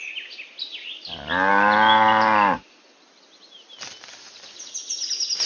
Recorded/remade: recorded